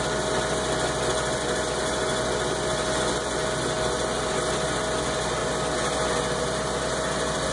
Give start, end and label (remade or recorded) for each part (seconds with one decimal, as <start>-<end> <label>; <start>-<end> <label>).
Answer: 0.0-7.5 recorded